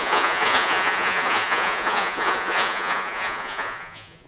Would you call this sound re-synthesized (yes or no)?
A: yes